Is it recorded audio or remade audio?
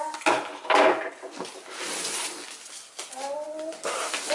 recorded